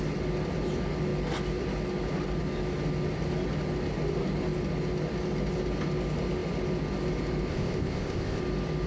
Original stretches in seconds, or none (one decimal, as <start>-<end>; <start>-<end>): 0.0-7.5; 8.4-8.9